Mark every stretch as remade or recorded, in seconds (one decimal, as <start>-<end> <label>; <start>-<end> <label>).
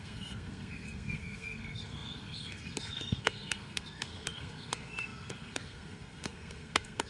0.0-7.1 remade